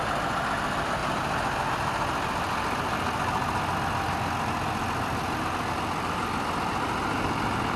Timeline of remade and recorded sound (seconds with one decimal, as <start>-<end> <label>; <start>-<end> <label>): 0.0-7.8 recorded